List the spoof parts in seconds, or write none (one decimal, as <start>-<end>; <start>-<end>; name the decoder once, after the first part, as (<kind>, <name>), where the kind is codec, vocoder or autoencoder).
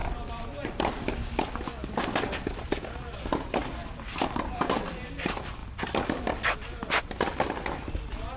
0.0-4.7 (vocoder, BigVGAN v2); 5.6-7.5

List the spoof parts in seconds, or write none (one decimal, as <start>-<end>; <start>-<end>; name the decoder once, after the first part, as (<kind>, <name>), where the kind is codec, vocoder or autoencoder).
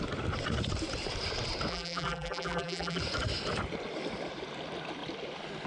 1.7-3.0 (vocoder, BigVGAN v2)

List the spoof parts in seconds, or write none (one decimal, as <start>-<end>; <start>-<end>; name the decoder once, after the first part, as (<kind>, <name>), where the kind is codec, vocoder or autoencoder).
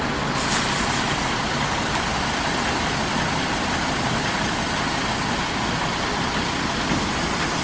none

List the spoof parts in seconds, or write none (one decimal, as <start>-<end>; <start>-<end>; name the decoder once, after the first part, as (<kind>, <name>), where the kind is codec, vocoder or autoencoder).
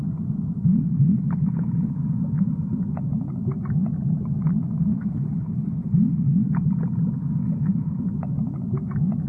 0.7-1.9 (codec, HILCodec); 4.9-6.5; 7.4-8.0